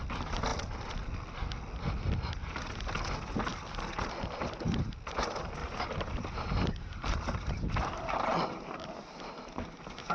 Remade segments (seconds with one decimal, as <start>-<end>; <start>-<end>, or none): 5.6-9.6